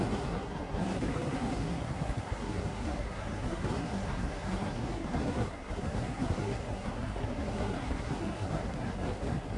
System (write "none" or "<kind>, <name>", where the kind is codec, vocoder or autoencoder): codec, SNAC